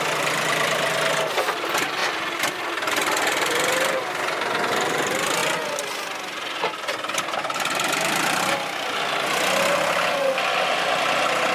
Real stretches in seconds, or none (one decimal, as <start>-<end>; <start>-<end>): 0.0-11.5